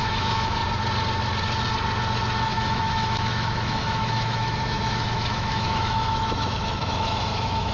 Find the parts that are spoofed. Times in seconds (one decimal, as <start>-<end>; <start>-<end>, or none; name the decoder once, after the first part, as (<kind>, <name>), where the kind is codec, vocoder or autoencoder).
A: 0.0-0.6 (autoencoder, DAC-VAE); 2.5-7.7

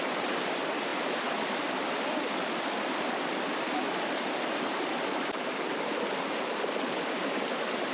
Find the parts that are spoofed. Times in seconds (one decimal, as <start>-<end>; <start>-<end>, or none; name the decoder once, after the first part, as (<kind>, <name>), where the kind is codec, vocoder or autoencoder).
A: none

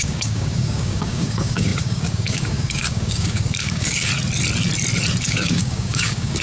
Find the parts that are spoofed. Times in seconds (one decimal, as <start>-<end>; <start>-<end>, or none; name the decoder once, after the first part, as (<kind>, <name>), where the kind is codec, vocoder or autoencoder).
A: 0.0-4.1 (codec, DAC); 5.2-6.4

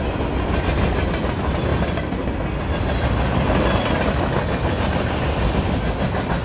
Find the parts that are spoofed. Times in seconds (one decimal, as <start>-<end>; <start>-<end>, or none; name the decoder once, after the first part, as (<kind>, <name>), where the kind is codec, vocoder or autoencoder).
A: none

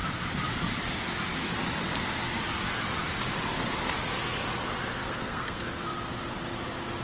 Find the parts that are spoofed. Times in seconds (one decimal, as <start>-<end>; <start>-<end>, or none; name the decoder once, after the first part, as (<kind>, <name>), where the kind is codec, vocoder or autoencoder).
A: 5.0-5.6 (codec, SNAC)

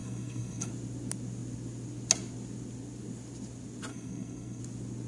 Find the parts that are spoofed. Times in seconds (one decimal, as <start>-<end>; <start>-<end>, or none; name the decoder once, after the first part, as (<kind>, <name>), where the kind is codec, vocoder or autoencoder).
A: 0.0-0.7 (codec, SNAC); 3.9-4.6